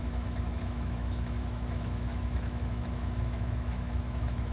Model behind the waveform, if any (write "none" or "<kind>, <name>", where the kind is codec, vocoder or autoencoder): autoencoder, DAC-VAE